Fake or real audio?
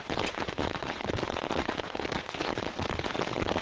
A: fake